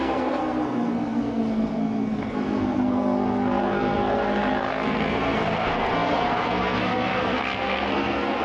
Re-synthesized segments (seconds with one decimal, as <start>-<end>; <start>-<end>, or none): 0.0-8.4